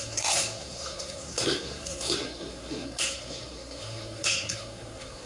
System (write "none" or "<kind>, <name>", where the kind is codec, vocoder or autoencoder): codec, SNAC